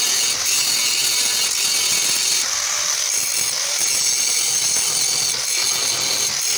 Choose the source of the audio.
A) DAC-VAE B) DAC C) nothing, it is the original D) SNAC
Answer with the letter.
C